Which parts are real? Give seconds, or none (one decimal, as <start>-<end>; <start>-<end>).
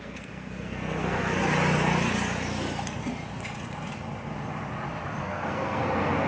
1.4-5.2